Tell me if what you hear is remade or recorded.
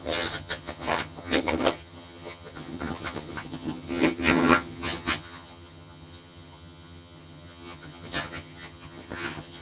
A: remade